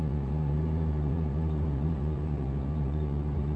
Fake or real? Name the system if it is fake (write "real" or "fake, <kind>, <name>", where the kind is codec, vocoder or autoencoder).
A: fake, vocoder, Vocos